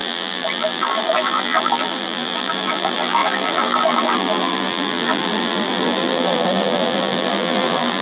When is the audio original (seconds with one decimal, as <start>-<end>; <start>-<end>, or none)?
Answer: none